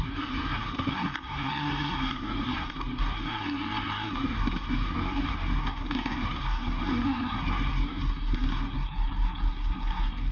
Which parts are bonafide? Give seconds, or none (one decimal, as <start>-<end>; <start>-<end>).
none